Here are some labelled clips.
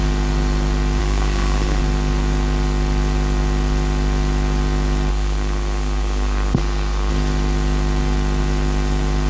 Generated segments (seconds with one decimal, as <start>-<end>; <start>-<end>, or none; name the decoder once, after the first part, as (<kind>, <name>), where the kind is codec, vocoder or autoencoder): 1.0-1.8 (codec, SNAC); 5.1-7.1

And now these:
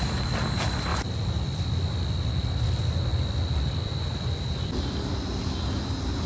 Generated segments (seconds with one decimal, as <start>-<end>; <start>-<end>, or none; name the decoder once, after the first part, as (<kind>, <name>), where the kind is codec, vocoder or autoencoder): 0.9-1.6 (vocoder, BigVGAN v2); 3.1-5.8

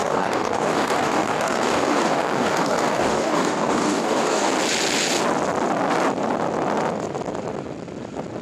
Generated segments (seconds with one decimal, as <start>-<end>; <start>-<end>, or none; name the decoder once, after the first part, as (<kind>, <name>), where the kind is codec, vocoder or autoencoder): 0.0-4.5 (codec, DAC)

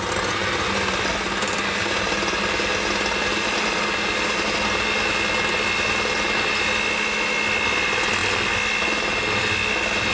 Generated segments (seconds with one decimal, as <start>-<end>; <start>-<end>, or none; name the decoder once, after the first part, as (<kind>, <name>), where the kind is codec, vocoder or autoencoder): none

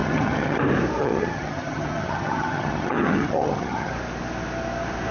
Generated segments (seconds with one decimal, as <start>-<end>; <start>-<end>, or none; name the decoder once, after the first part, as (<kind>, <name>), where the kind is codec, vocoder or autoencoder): 0.0-0.6 (vocoder, HiFi-GAN); 1.0-3.9

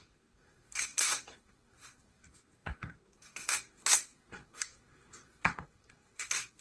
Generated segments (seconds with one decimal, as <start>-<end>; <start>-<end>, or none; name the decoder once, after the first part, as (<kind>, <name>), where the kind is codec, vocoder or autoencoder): 0.0-6.6 (codec, SNAC)

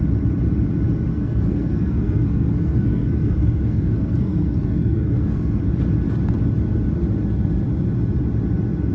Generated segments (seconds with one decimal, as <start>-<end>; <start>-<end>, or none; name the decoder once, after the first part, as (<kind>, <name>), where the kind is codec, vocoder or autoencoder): 1.1-5.6 (codec, SNAC)